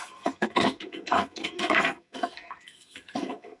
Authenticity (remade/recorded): remade